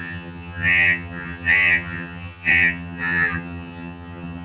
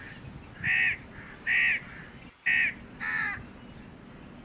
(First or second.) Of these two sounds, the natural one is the second